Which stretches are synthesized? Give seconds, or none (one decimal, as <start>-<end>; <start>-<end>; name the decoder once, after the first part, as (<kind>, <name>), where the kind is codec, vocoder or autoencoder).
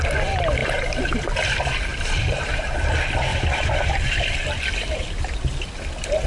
1.9-2.6 (vocoder, BigVGAN v2); 3.3-5.0